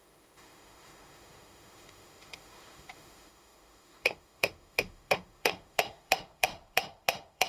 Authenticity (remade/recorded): remade